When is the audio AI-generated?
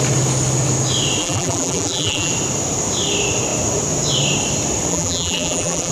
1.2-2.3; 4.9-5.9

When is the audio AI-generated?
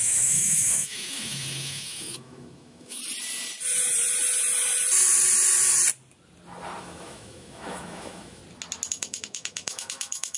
0.0-3.0; 6.8-8.4; 8.9-10.4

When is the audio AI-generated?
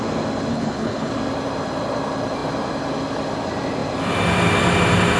0.5-1.1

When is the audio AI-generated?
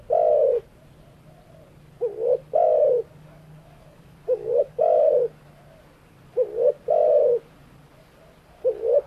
3.1-5.1